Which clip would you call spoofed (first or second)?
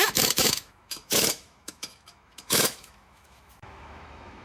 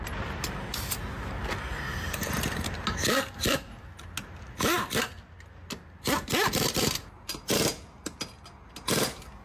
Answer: first